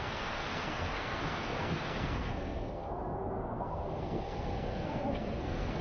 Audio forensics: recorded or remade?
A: remade